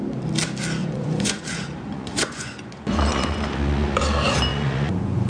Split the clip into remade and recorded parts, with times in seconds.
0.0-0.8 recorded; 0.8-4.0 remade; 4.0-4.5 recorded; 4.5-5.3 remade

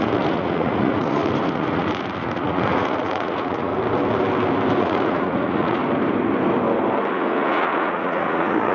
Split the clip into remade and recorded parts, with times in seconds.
0.0-3.7 remade; 3.7-4.8 recorded; 4.8-5.8 remade; 5.8-7.1 recorded; 7.1-8.7 remade

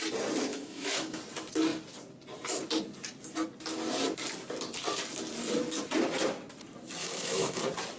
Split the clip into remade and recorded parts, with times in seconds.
0.0-0.5 recorded; 0.5-1.2 remade; 1.2-7.0 recorded; 7.0-7.6 remade; 7.6-8.0 recorded

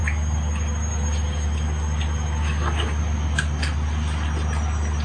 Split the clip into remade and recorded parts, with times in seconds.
0.0-5.0 recorded